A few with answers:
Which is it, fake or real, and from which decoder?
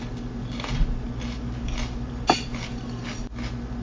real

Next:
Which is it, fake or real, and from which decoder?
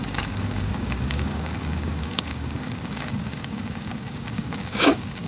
fake, codec, DAC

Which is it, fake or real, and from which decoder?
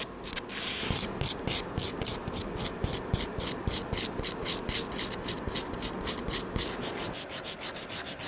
real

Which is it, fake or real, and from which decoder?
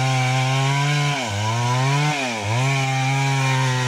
real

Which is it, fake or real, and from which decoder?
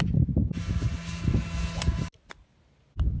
real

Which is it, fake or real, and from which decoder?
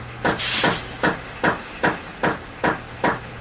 real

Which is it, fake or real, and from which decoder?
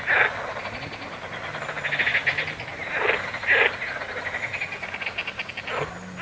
real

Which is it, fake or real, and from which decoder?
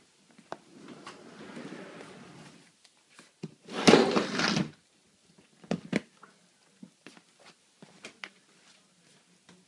real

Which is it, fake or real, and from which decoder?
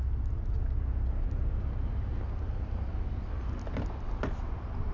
real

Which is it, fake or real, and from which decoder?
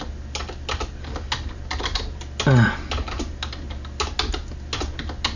real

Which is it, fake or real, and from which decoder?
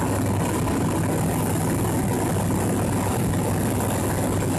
real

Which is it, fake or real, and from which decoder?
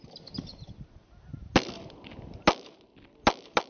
real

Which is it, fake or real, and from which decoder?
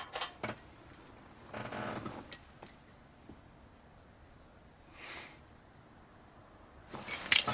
real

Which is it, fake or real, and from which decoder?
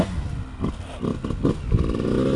real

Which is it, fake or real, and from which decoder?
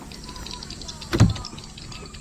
real